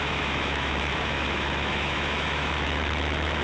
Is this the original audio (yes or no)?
no